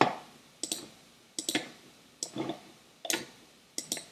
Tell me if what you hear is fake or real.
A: real